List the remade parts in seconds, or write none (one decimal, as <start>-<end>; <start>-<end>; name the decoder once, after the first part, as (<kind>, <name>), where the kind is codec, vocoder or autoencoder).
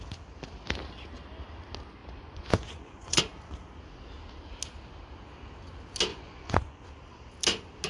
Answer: 2.0-3.2 (vocoder, Vocos); 6.1-6.8